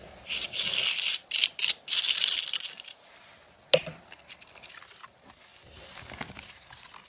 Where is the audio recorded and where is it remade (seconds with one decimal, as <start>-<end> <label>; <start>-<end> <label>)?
0.0-7.1 recorded